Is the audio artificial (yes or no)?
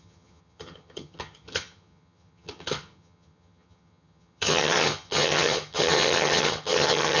yes